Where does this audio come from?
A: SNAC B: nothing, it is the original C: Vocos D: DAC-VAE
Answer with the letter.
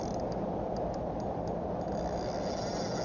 B